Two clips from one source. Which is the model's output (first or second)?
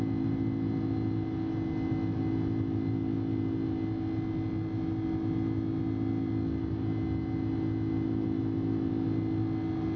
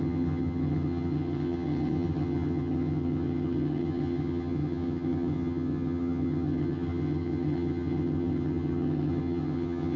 second